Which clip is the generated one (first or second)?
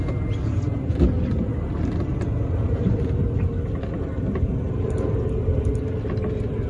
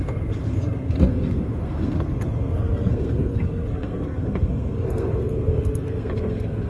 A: second